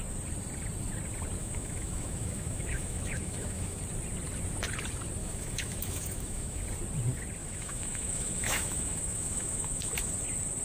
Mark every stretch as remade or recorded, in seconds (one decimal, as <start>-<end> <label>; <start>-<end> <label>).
0.0-1.4 recorded; 1.4-3.8 remade; 3.8-5.2 recorded; 5.2-6.6 remade; 6.6-7.4 recorded; 7.4-10.1 remade; 10.1-10.6 recorded